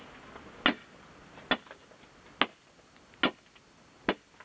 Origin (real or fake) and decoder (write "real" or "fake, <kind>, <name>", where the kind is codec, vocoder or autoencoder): real